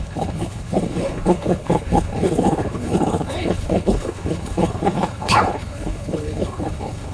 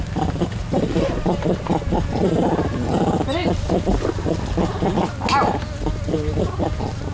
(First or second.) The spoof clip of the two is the first